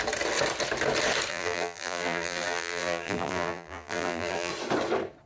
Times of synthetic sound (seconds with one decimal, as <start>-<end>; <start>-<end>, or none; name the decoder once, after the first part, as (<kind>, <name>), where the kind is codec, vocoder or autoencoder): 1.3-4.5 (vocoder, BigVGAN v2)